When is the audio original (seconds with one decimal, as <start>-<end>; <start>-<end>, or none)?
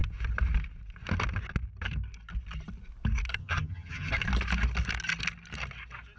0.0-3.4; 4.1-6.2